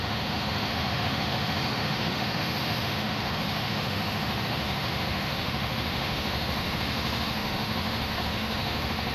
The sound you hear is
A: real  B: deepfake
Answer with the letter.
B